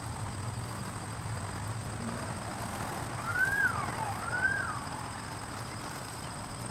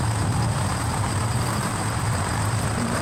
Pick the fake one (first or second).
second